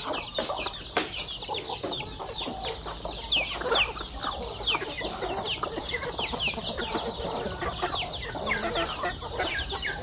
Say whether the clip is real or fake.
real